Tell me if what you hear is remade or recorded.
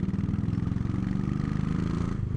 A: recorded